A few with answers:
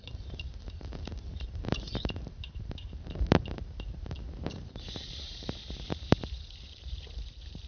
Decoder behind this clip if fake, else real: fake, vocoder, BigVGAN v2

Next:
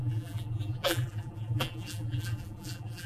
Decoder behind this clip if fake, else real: fake, vocoder, BigVGAN v2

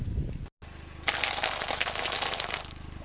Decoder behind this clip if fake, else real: real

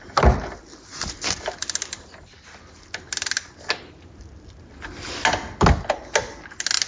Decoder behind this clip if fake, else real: real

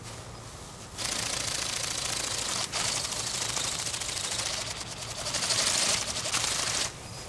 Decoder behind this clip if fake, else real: real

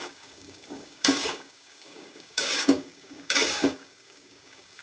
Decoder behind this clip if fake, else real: fake, codec, DAC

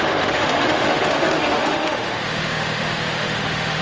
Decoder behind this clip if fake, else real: fake, autoencoder, DAC-VAE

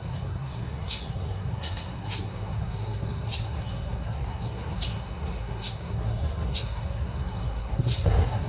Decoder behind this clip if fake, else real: fake, codec, SNAC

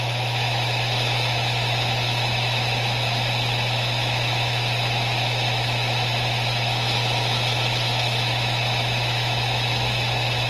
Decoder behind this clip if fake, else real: fake, autoencoder, DAC-VAE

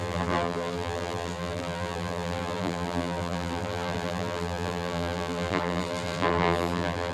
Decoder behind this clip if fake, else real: fake, vocoder, BigVGAN v2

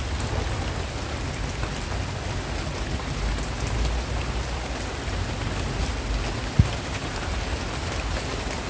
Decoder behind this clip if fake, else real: real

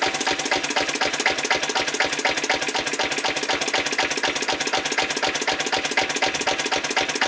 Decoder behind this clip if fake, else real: real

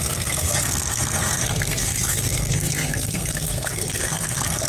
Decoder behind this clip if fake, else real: fake, codec, SNAC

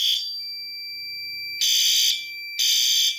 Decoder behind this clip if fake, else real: real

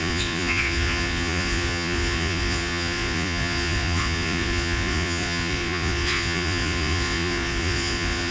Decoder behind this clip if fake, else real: fake, vocoder, Vocos